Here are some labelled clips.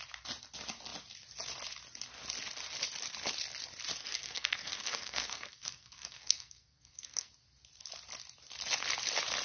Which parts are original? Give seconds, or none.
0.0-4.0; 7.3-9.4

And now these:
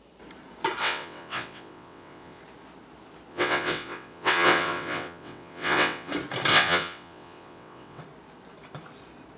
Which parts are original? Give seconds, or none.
0.0-0.8; 2.4-3.3; 6.1-6.5; 8.0-9.4

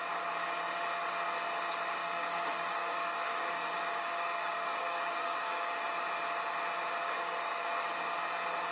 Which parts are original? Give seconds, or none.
0.0-2.0; 5.7-7.0; 7.9-8.7

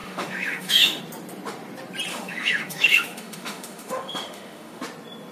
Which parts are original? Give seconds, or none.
1.0-2.1; 4.8-5.3

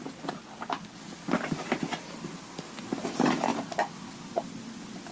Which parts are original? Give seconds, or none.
0.0-5.1

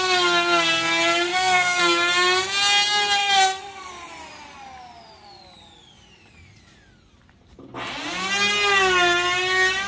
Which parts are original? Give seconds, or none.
0.0-1.3; 1.8-3.2; 3.9-9.9

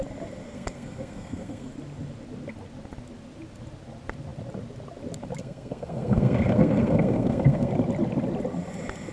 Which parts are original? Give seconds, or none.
0.0-0.4; 1.7-5.4; 7.7-9.1